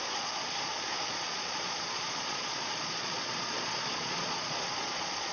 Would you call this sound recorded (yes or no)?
no